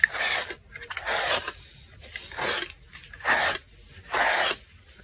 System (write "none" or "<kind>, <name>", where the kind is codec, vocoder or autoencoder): none